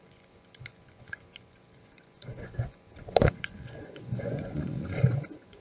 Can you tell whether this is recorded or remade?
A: remade